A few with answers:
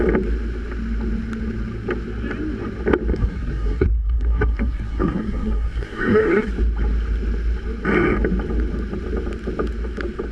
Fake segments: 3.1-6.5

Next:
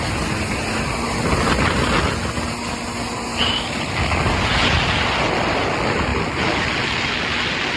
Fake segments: none

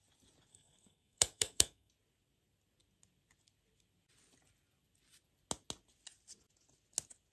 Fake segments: 0.5-1.9